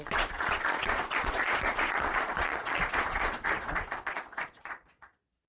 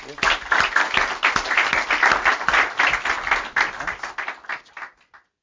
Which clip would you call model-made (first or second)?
first